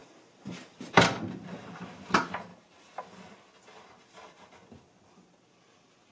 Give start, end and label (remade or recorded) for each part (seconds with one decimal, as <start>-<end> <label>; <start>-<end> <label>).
0.0-1.8 remade; 1.8-2.5 recorded; 2.5-3.0 remade; 3.0-6.1 recorded